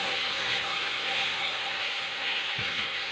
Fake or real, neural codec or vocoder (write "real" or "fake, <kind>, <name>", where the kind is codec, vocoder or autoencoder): fake, codec, SNAC